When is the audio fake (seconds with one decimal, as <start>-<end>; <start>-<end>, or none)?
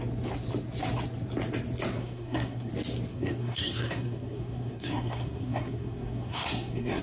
2.0-2.7; 3.1-7.0